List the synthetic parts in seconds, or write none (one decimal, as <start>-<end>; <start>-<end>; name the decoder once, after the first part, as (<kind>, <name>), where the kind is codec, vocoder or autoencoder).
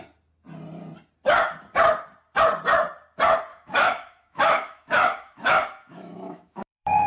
3.5-7.1 (autoencoder, DAC-VAE)